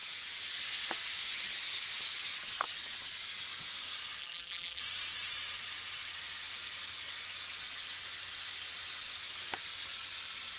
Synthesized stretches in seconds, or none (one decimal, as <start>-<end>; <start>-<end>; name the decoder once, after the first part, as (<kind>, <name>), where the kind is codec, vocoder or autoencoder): 4.2-4.8 (vocoder, BigVGAN v2)